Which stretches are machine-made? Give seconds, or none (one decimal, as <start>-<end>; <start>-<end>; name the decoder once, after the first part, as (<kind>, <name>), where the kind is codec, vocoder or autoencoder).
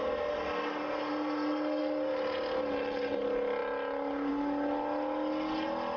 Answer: none